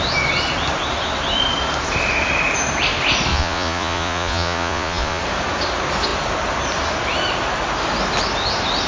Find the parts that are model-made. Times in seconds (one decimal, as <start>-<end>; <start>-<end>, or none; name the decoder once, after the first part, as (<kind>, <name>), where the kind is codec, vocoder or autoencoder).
3.3-5.2 (vocoder, Vocos)